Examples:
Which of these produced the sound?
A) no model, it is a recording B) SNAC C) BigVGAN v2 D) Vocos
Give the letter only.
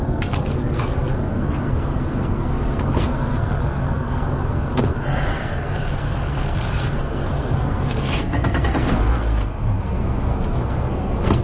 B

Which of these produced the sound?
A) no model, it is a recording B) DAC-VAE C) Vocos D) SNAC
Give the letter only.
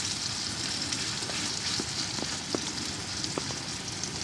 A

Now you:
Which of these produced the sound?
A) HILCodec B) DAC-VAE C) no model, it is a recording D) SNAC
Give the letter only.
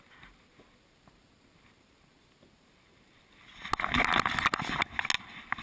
C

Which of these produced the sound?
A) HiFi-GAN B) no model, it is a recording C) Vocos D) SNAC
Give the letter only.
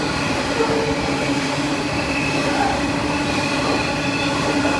B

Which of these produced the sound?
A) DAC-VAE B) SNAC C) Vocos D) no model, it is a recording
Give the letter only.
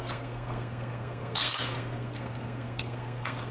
B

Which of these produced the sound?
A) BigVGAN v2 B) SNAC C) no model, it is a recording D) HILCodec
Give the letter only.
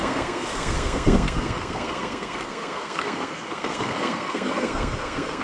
B